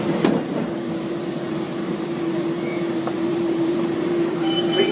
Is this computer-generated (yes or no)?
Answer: yes